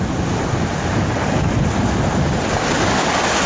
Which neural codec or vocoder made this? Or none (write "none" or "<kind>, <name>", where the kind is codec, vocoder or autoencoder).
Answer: none